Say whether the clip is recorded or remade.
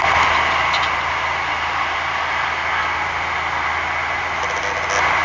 recorded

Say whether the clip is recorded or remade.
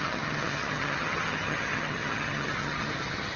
remade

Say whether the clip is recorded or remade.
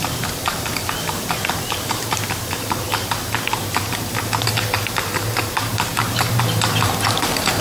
remade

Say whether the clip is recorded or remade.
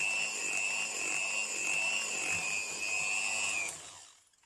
recorded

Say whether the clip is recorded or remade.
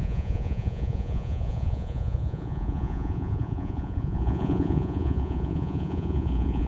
remade